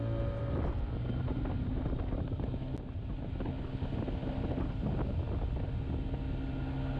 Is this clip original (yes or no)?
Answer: yes